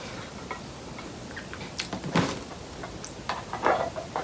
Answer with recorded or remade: recorded